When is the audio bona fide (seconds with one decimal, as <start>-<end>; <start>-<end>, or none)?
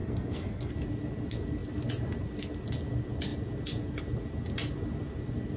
0.7-5.6